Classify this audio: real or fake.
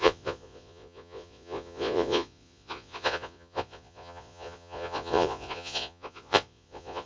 fake